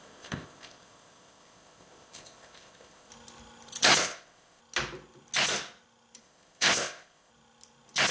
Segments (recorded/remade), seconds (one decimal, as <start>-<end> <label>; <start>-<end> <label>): 0.0-3.1 remade; 3.1-4.0 recorded; 4.0-4.6 remade; 4.6-6.2 recorded; 6.2-7.3 remade; 7.3-8.1 recorded